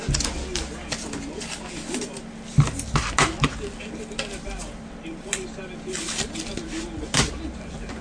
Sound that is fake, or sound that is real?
real